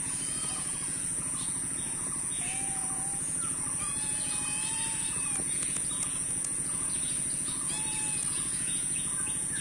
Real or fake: fake